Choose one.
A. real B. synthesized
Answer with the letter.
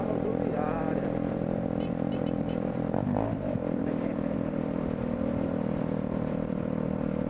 B